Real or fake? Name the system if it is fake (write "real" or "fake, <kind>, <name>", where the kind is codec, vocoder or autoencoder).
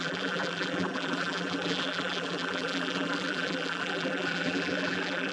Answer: fake, vocoder, BigVGAN v2